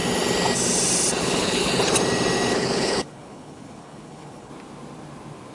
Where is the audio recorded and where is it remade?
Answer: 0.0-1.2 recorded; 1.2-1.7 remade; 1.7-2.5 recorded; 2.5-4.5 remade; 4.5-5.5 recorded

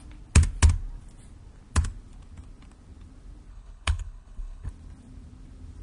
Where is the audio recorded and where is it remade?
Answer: 0.0-3.5 recorded; 3.5-4.7 remade; 4.7-5.8 recorded